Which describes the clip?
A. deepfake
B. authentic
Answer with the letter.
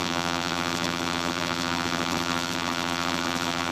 A